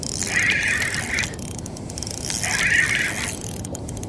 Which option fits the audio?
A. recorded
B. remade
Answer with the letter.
A